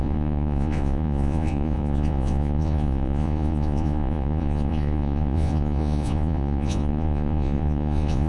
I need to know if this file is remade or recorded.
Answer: remade